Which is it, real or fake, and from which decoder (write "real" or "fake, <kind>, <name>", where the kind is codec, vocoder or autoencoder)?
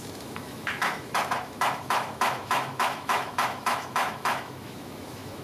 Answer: fake, autoencoder, DAC-VAE